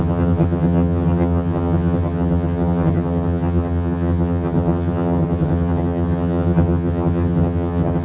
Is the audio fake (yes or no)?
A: yes